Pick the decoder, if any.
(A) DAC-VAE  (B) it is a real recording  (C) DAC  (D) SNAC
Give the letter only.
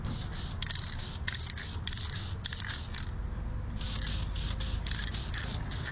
B